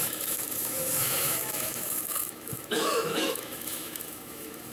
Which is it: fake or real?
fake